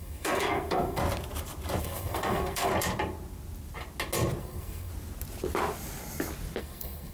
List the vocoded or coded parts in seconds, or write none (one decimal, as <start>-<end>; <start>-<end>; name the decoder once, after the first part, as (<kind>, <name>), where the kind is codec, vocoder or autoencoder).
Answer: 0.0-1.0 (codec, SNAC); 1.8-2.7; 4.4-4.9; 6.6-7.1